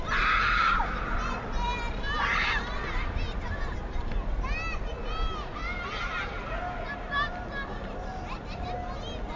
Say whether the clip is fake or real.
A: real